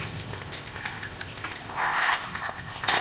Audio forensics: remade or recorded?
remade